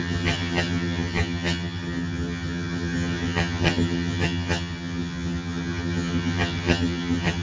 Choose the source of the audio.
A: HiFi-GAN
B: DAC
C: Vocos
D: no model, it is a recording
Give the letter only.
A